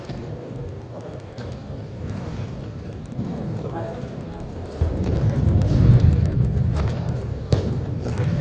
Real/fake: fake